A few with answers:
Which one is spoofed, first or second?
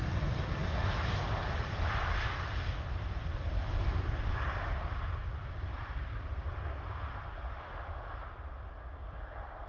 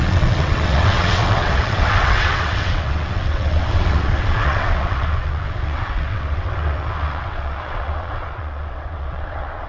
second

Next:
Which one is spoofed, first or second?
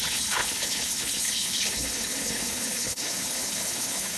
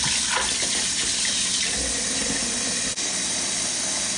first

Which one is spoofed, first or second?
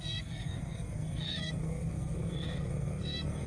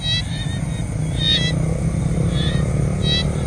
first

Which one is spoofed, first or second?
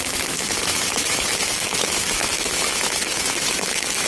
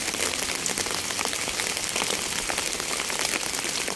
first